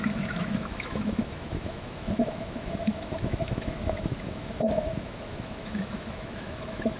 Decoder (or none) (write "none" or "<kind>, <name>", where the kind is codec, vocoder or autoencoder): autoencoder, DAC-VAE